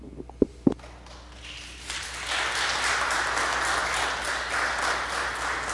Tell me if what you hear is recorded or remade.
recorded